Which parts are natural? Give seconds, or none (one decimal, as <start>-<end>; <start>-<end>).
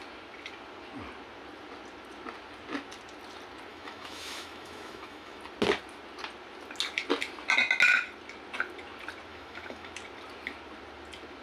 0.0-3.7; 5.4-9.3; 9.9-11.4